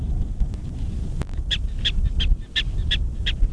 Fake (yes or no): no